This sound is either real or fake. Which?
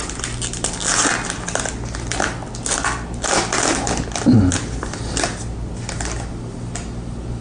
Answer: real